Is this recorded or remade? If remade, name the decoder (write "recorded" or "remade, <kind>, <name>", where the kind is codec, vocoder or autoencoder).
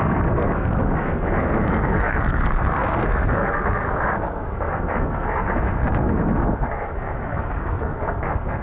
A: remade, codec, SNAC